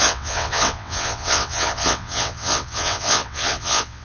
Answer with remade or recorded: remade